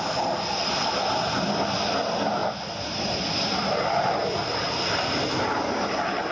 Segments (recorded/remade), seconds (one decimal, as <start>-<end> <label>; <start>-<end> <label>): 0.0-6.3 recorded